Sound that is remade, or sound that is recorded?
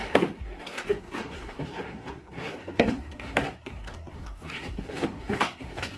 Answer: remade